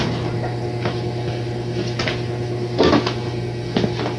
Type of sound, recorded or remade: recorded